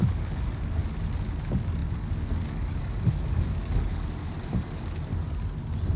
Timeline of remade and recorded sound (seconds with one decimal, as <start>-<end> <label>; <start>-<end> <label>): 0.0-0.8 remade; 0.8-1.4 recorded; 1.4-5.1 remade; 5.1-6.0 recorded